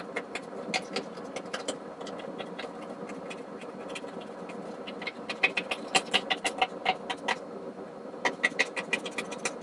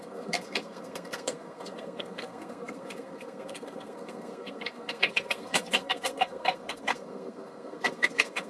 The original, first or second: first